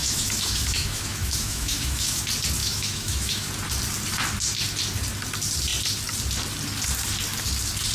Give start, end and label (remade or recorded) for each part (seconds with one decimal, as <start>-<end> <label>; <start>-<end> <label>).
0.0-2.2 remade; 2.2-2.6 recorded; 2.6-3.5 remade; 3.5-7.9 recorded

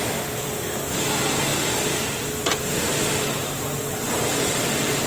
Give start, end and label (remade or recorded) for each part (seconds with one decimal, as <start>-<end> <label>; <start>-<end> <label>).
0.0-5.1 recorded

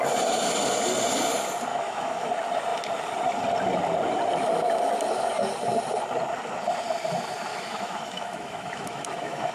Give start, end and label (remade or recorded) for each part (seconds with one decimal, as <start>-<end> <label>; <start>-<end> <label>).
0.0-1.7 recorded; 1.7-2.3 remade; 2.3-7.5 recorded; 7.5-9.5 remade

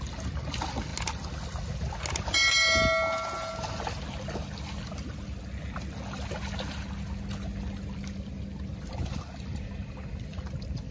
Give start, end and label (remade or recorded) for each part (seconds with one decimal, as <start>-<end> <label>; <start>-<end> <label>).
0.0-10.9 recorded

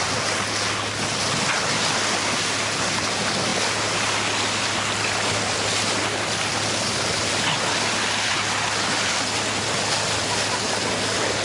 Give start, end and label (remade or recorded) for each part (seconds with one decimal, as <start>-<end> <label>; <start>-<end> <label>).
0.0-11.4 recorded

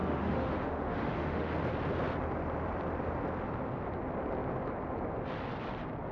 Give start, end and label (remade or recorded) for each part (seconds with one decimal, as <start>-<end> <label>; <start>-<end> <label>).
0.0-1.5 remade; 1.5-6.1 recorded